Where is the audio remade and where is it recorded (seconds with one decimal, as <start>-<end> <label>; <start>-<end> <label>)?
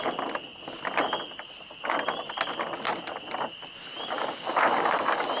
0.0-5.4 recorded